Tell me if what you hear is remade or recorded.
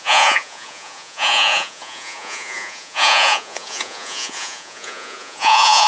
remade